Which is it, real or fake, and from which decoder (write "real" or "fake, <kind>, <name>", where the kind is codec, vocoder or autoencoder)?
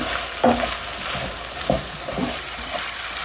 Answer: real